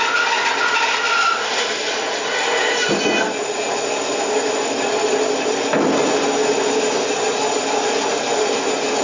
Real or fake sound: real